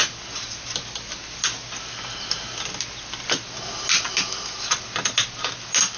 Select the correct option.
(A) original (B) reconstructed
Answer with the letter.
A